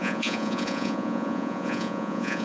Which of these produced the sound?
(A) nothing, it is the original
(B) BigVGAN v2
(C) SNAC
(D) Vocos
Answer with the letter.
D